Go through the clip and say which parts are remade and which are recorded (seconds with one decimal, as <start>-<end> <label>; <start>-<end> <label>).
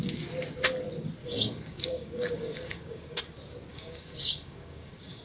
0.0-1.2 recorded; 1.2-3.2 remade; 3.2-3.7 recorded; 3.7-5.2 remade